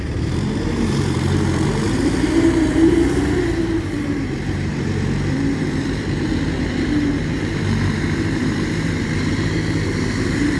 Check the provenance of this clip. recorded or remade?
remade